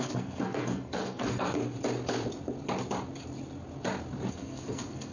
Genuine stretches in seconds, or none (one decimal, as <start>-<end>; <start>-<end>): 1.6-4.3